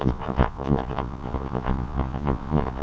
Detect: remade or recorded remade